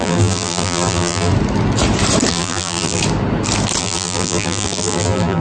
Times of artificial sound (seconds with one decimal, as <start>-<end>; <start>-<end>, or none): 0.0-1.3; 2.3-3.0; 3.8-5.4